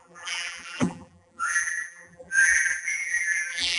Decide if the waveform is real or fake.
fake